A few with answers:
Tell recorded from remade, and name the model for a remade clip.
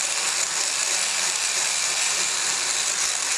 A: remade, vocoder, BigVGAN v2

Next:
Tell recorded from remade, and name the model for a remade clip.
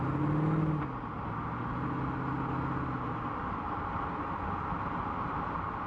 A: recorded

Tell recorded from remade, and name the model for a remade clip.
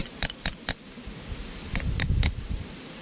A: recorded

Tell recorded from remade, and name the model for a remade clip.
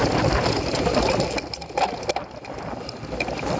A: recorded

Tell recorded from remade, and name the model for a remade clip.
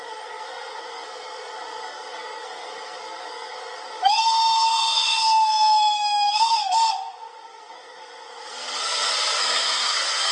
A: remade, codec, SNAC